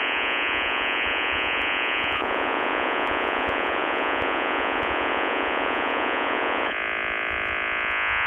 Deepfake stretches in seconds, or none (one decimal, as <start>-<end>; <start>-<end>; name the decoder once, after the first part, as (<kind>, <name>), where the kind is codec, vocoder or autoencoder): 0.0-8.3 (vocoder, Vocos)